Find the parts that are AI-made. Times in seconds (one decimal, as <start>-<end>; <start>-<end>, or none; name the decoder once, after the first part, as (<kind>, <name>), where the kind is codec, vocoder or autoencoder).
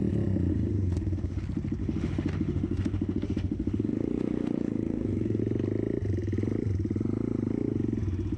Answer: 0.5-1.4 (autoencoder, DAC-VAE); 1.8-5.4